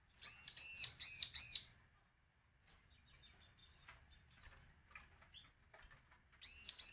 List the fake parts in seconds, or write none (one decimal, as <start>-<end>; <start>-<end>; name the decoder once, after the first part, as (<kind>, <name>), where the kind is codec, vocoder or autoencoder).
none